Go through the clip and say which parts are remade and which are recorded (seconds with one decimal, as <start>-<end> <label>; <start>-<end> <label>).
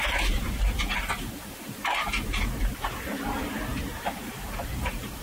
0.0-5.2 remade